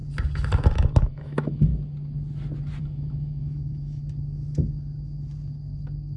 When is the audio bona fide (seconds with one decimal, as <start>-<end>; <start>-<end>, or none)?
0.0-1.1; 1.7-2.8; 4.0-6.2